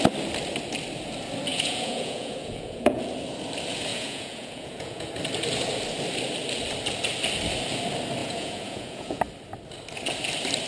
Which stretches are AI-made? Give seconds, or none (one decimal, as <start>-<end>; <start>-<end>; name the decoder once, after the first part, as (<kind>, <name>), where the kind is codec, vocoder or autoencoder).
1.5-3.0 (vocoder, Vocos); 3.9-5.1; 8.2-9.2

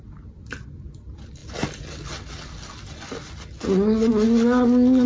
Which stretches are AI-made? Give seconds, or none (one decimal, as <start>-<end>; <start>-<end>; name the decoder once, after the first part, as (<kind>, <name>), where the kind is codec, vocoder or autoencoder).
none